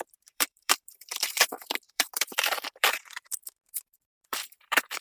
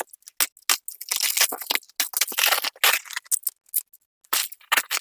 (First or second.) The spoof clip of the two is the first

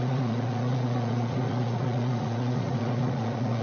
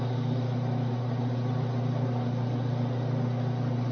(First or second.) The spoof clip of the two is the first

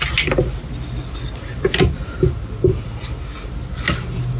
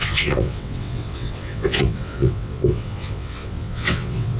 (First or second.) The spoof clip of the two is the second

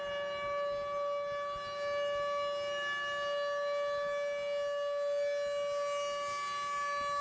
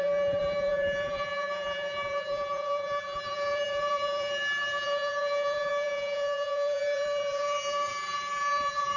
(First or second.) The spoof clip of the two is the second